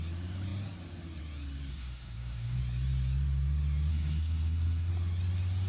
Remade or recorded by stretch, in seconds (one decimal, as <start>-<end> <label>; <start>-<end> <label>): 0.0-1.7 recorded; 1.7-2.6 remade; 2.6-3.9 recorded; 3.9-4.9 remade; 4.9-5.7 recorded